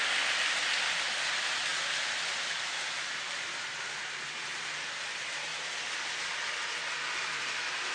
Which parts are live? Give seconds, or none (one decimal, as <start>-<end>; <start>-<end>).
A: 1.7-4.2